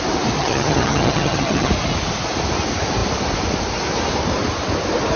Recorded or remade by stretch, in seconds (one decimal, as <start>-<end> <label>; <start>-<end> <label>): 0.0-0.4 recorded; 0.4-1.7 remade; 1.7-5.2 recorded